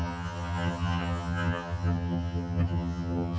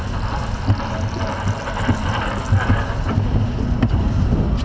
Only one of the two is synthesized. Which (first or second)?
first